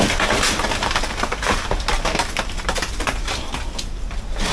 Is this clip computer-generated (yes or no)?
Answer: no